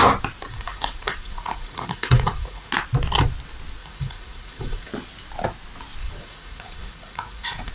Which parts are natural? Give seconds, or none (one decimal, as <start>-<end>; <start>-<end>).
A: 0.0-0.5; 2.7-3.8; 4.9-6.0